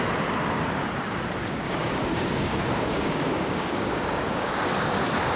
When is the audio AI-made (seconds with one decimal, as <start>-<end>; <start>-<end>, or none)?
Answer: 1.4-4.6

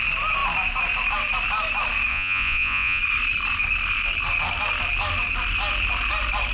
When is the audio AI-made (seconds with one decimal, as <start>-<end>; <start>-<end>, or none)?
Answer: 2.1-3.0

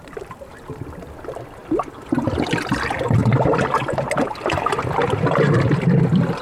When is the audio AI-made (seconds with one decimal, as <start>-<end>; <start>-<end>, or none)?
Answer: 0.0-1.6; 2.7-3.2; 6.0-6.4

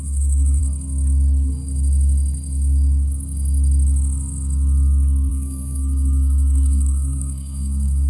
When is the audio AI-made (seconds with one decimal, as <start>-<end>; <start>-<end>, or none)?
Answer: 0.0-0.6; 5.3-8.1

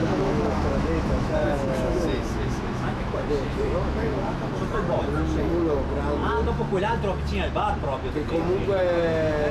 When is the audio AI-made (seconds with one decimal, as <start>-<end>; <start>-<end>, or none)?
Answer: 0.0-4.5

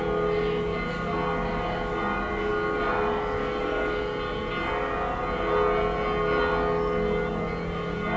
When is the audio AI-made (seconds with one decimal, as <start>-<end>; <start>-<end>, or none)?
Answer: none